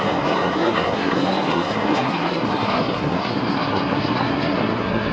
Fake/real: fake